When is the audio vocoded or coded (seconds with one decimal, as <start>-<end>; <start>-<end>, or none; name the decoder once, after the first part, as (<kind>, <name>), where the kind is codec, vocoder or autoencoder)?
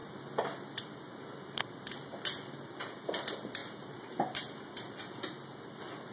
3.6-4.8 (vocoder, BigVGAN v2)